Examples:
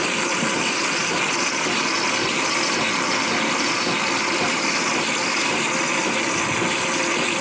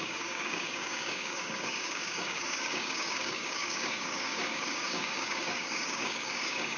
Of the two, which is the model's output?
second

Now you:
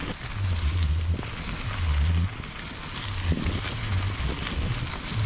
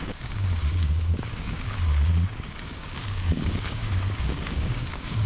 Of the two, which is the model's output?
second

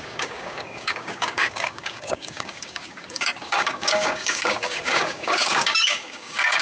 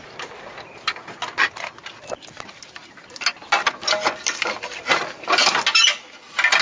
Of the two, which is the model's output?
first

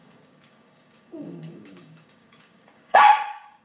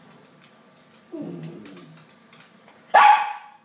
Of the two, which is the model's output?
first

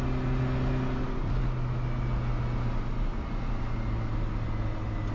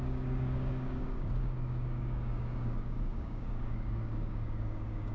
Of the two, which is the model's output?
second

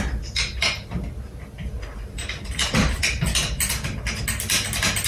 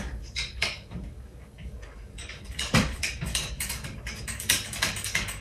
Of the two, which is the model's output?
second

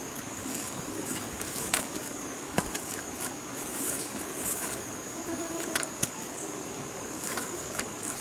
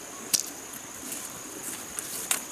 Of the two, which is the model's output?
first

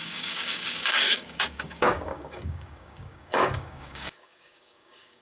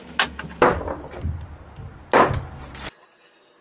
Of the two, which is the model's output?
first